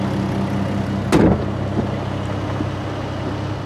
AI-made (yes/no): no